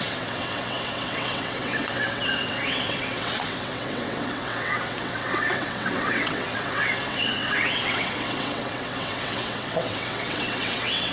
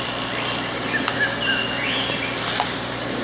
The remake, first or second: first